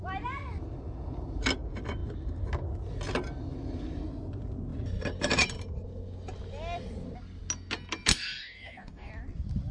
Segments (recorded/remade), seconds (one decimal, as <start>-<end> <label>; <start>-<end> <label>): 0.0-8.1 recorded; 8.1-9.1 remade; 9.1-9.7 recorded